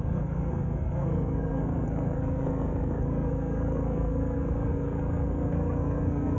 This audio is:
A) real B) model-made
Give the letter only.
B